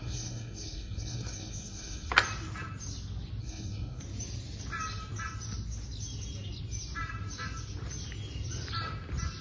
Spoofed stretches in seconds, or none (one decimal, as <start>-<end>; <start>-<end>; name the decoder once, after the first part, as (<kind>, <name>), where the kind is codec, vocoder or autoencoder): 0.0-2.1 (codec, SNAC); 3.4-4.0

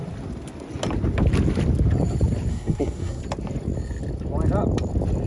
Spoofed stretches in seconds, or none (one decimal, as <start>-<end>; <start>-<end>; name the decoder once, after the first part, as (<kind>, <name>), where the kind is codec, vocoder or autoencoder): 2.5-3.2 (codec, SNAC)